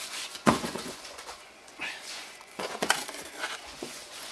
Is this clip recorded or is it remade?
remade